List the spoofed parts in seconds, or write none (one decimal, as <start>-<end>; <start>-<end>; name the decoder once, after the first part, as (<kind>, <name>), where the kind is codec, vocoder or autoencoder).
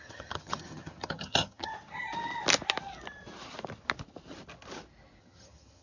0.0-1.7 (vocoder, HiFi-GAN); 5.2-5.8